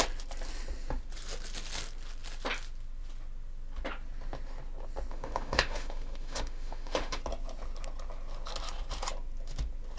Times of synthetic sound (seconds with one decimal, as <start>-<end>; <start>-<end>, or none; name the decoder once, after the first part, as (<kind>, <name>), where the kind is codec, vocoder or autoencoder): 5.1-7.2 (autoencoder, DAC-VAE)